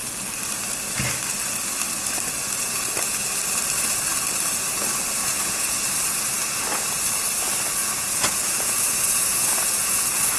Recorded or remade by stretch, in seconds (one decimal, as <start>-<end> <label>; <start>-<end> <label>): 0.0-5.2 recorded; 5.2-5.8 remade; 5.8-7.8 recorded; 7.8-10.4 remade

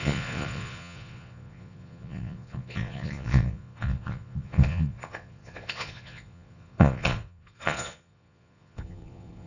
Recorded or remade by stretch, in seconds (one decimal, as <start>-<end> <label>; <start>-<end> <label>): 0.0-9.5 remade

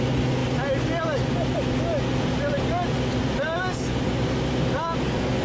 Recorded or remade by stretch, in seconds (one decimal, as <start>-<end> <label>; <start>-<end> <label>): 0.0-5.4 recorded

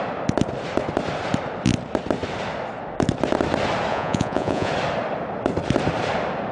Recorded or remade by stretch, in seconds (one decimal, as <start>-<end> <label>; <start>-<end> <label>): 0.0-3.9 recorded; 3.9-4.7 remade; 4.7-6.5 recorded

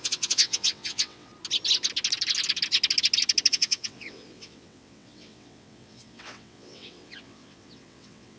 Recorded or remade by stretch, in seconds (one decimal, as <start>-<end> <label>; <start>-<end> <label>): 0.0-1.3 remade; 1.3-3.5 recorded; 3.5-8.4 remade

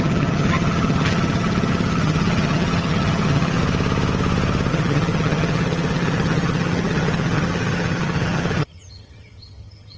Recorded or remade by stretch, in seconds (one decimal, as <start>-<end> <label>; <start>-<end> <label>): 0.0-3.6 remade; 3.6-4.7 recorded; 4.7-10.0 remade

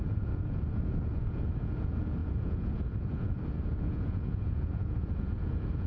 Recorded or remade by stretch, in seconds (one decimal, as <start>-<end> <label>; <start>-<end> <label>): 0.0-5.9 remade